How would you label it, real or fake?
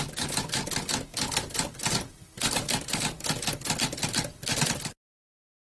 real